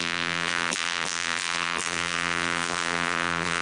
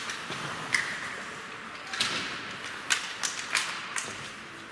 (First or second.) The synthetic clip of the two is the first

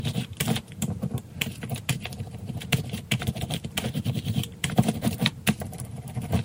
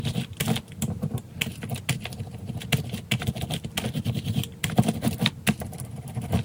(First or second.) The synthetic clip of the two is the first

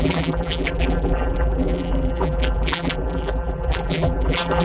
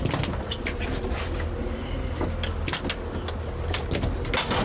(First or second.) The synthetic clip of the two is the first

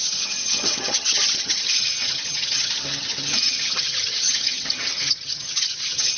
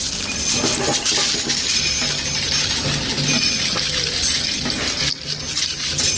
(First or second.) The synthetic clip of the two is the first